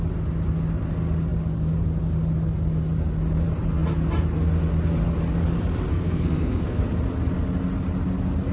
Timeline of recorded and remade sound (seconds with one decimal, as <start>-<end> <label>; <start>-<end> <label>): 0.0-5.9 recorded; 5.9-6.8 remade; 6.8-8.5 recorded